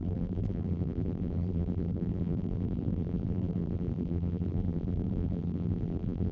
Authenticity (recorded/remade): remade